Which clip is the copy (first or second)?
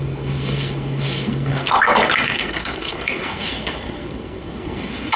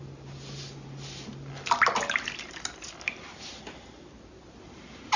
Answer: first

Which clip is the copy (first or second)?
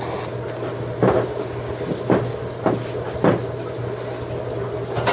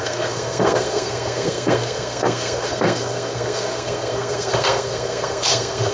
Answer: second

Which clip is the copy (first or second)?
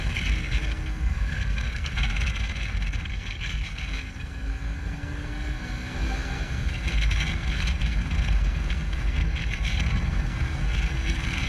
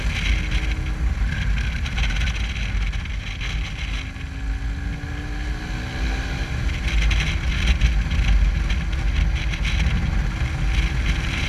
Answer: first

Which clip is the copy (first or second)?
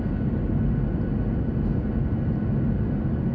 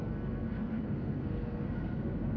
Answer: second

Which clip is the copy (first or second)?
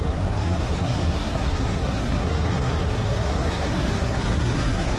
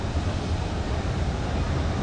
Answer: first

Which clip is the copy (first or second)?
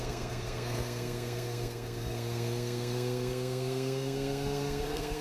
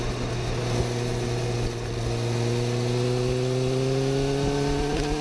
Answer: first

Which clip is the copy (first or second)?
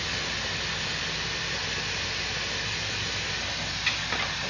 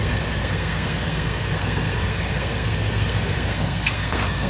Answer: second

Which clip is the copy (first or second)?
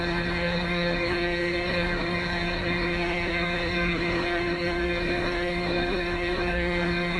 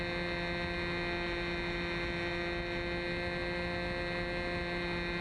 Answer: first